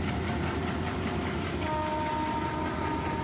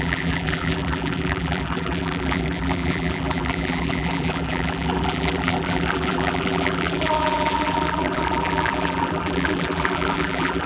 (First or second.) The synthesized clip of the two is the second